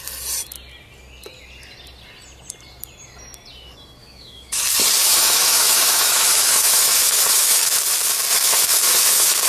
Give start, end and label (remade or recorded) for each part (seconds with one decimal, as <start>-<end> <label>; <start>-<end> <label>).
0.0-4.0 recorded; 4.0-4.6 remade; 4.6-5.0 recorded; 5.0-7.8 remade; 7.8-8.3 recorded; 8.3-9.5 remade